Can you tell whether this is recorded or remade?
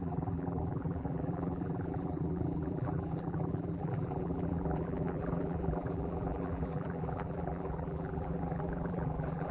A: remade